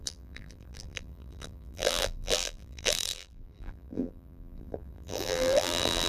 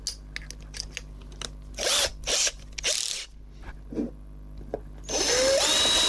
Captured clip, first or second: second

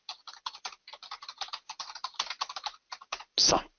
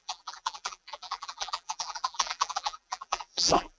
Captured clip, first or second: first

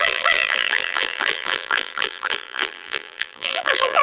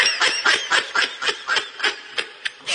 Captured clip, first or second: second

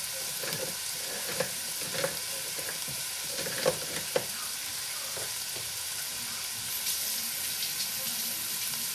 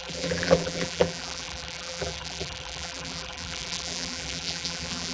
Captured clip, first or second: first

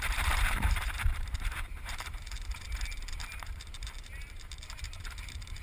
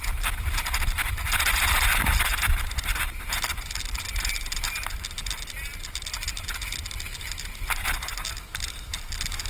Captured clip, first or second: second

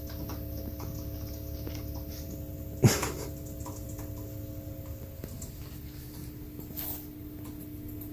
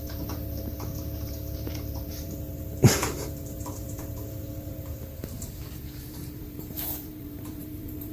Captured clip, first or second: first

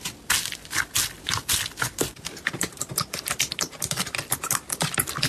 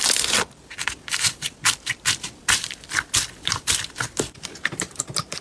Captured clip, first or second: first